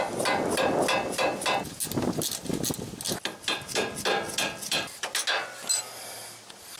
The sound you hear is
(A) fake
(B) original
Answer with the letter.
B